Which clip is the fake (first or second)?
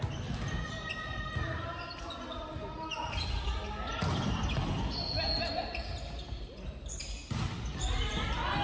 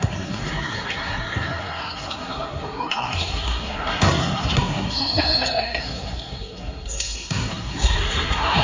second